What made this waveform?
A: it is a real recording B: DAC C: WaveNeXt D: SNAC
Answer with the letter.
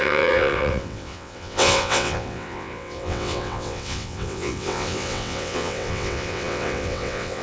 C